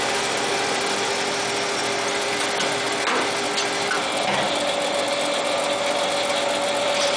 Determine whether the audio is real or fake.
real